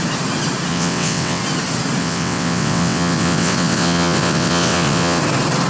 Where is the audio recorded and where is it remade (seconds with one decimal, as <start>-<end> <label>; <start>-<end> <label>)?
0.0-0.7 recorded; 0.7-1.4 remade; 1.4-2.0 recorded; 2.0-5.2 remade; 5.2-5.7 recorded